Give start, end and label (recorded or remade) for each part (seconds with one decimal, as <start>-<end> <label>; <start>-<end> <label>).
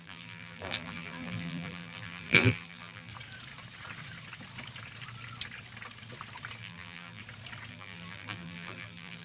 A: 0.0-3.1 remade; 3.1-6.6 recorded; 6.6-7.2 remade; 7.2-7.7 recorded; 7.7-9.2 remade